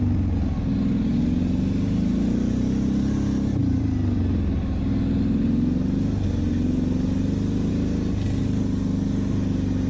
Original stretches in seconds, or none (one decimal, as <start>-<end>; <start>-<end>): 0.0-9.9